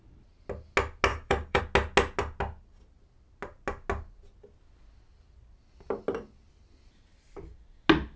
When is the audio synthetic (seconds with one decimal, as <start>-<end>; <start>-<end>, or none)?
1.1-1.6